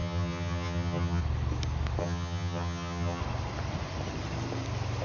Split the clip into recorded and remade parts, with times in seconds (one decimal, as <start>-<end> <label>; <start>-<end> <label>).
0.0-1.2 remade; 1.2-2.0 recorded; 2.0-3.2 remade; 3.2-5.0 recorded

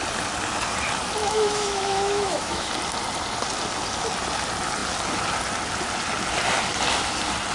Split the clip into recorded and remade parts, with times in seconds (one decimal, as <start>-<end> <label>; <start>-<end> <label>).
0.0-1.2 recorded; 1.2-2.7 remade; 2.7-7.5 recorded

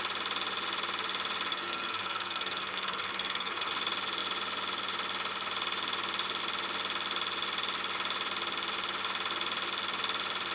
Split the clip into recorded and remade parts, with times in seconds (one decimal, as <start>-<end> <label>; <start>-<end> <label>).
0.0-1.5 recorded; 1.5-3.7 remade; 3.7-10.5 recorded

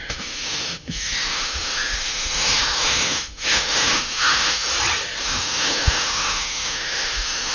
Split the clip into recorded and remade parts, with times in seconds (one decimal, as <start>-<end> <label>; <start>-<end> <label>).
0.0-4.7 remade; 4.7-5.2 recorded; 5.2-7.5 remade